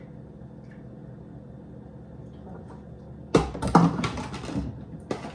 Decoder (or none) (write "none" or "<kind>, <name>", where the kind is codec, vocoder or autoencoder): none